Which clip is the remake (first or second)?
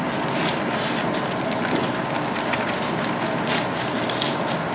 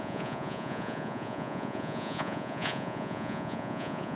second